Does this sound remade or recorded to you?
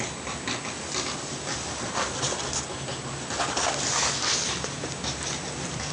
recorded